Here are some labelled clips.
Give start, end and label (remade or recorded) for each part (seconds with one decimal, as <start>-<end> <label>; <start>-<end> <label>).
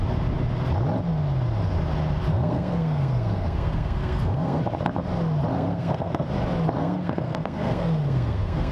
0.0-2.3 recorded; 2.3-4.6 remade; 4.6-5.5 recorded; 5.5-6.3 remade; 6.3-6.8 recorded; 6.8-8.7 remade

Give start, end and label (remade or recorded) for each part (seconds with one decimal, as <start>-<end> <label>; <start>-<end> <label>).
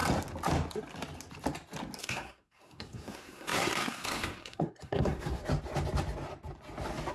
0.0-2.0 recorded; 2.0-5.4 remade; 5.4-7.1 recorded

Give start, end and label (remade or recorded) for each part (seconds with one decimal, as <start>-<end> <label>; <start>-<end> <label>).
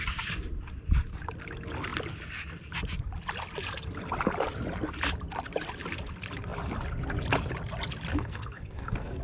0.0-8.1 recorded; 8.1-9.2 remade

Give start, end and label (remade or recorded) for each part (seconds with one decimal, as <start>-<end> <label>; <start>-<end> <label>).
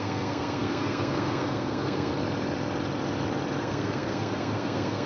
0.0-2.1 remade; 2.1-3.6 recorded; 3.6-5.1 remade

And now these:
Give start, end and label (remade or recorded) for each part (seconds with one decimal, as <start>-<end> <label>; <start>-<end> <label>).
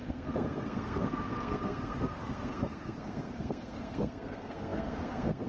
0.0-5.5 remade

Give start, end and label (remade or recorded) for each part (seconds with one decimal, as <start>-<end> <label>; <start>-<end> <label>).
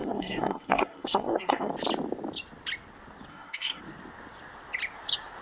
0.0-1.7 remade; 1.7-3.3 recorded; 3.3-3.8 remade; 3.8-5.4 recorded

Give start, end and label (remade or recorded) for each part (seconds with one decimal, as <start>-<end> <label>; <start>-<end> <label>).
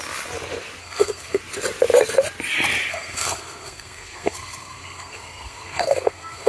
0.0-0.8 recorded; 0.8-1.4 remade; 1.4-2.9 recorded; 2.9-6.5 remade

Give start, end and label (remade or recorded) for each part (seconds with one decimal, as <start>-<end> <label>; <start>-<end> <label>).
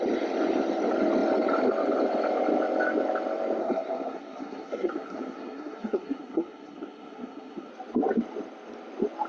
0.0-3.6 recorded; 3.6-7.7 remade; 7.7-9.3 recorded